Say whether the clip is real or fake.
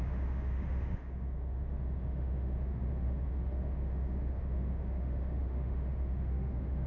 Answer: fake